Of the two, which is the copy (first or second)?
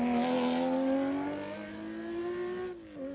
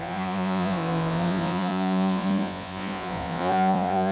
second